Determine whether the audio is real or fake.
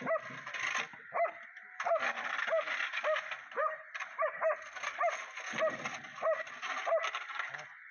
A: real